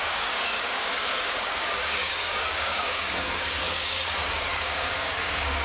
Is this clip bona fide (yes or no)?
no